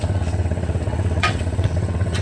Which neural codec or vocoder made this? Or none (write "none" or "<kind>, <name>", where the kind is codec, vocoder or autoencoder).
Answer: vocoder, WaveNeXt